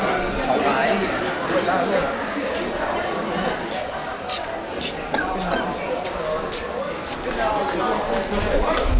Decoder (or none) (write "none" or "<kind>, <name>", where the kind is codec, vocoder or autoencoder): none